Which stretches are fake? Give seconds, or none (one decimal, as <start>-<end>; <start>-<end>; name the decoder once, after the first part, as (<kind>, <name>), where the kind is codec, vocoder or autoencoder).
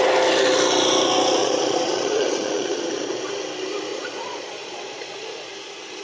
1.4-3.2 (vocoder, Vocos); 3.9-5.5